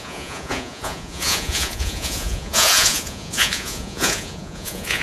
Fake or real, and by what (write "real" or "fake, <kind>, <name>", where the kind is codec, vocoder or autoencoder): fake, vocoder, Vocos